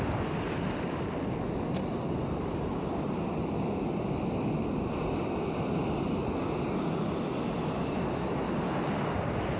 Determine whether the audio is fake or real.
real